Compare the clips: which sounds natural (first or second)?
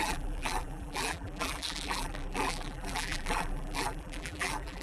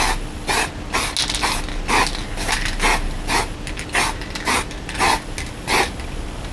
second